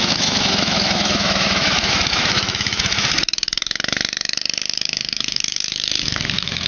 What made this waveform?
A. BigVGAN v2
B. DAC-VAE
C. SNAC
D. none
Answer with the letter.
B